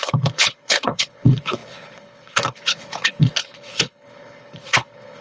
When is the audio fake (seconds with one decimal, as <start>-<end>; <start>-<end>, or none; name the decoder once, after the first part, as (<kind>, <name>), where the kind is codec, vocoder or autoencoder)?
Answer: 0.0-5.2 (codec, HILCodec)